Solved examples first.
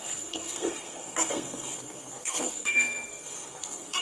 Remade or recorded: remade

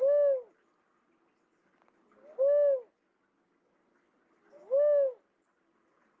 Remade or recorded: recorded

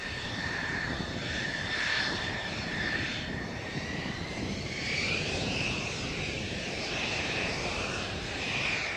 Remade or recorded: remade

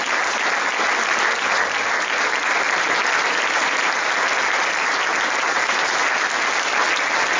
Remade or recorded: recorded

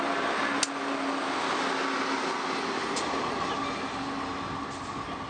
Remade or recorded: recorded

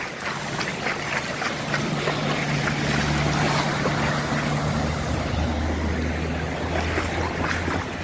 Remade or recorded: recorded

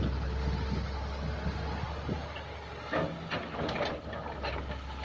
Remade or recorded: recorded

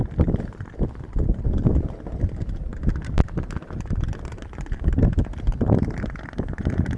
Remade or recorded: recorded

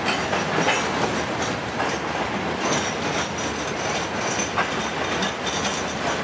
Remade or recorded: recorded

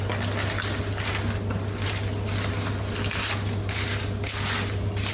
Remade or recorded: recorded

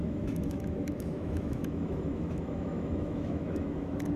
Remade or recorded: remade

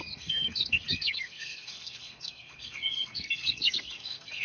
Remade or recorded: remade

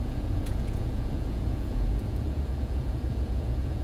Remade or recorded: remade